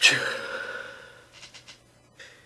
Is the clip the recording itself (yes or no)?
yes